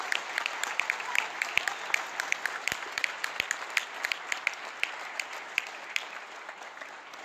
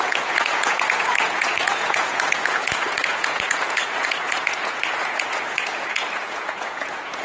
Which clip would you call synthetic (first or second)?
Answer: second